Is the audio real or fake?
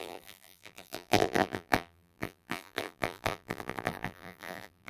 fake